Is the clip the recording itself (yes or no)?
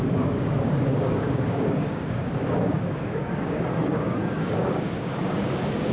no